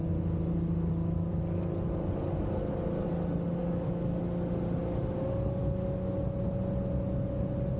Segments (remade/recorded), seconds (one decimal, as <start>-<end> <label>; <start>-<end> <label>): 0.0-3.6 recorded; 3.6-4.2 remade; 4.2-5.6 recorded; 5.6-6.2 remade; 6.2-7.8 recorded